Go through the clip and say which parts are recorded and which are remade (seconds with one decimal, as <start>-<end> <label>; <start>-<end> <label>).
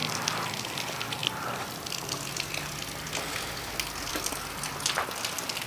0.0-5.7 recorded